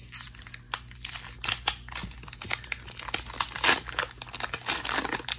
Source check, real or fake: real